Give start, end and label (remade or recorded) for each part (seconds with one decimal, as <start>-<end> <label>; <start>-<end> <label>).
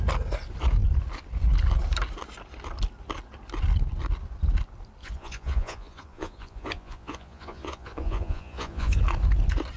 0.0-5.0 recorded; 5.0-9.0 remade; 9.0-9.8 recorded